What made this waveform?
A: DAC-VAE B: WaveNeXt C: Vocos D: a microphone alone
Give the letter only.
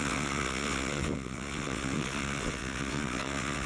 B